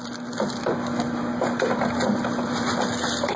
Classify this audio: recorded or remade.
recorded